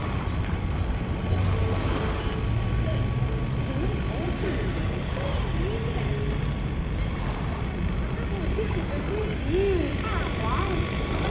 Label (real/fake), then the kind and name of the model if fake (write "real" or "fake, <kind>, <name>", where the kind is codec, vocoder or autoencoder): real